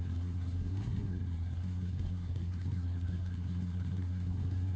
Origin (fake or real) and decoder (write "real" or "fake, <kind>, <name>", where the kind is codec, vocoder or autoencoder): fake, codec, SNAC